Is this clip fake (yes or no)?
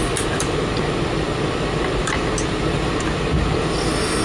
no